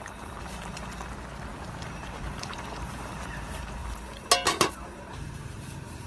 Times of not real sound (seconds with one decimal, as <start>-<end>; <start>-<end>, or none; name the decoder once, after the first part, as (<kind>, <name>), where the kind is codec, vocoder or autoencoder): 0.0-0.8 (vocoder, BigVGAN v2); 1.5-3.8; 4.7-6.1